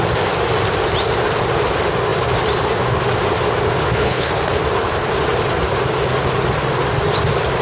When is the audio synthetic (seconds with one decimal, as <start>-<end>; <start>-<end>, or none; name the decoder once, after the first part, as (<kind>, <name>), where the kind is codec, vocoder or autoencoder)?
3.8-4.3 (codec, HILCodec)